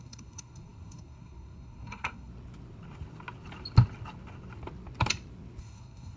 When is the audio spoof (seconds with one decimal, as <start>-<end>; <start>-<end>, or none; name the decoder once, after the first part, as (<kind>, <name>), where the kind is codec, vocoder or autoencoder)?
0.0-2.3 (codec, SNAC); 5.6-6.2

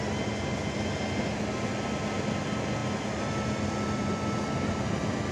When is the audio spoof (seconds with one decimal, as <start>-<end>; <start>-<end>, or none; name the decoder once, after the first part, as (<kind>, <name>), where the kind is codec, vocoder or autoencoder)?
none

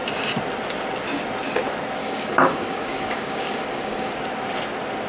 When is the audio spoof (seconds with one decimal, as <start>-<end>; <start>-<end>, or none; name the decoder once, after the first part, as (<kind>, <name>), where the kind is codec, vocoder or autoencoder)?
2.0-4.1 (codec, DAC)

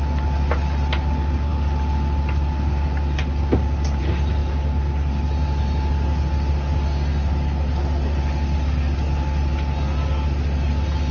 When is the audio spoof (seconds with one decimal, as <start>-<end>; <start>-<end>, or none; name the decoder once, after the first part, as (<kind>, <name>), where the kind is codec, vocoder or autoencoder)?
none

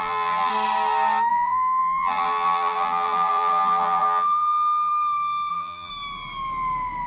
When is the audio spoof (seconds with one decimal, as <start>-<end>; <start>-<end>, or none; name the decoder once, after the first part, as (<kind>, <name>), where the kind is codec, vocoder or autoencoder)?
0.0-0.5 (vocoder, BigVGAN v2); 1.3-4.9; 5.5-5.9

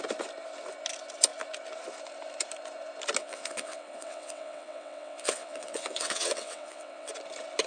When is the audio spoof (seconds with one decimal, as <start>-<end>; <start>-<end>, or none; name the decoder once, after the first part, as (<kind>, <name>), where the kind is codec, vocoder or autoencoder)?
3.2-7.1 (vocoder, WaveNeXt)

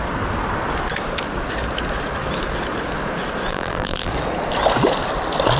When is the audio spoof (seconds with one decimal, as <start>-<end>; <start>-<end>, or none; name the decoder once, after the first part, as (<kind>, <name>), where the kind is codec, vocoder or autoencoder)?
3.5-4.1 (vocoder, BigVGAN v2)

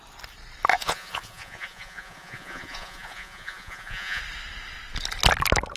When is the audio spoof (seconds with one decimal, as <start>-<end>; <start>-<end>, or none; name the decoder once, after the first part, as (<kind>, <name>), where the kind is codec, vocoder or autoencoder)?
0.7-4.2 (vocoder, Vocos)